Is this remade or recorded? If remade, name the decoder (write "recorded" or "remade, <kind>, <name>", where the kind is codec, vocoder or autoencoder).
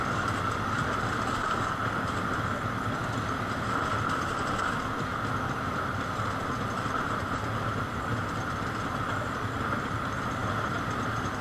recorded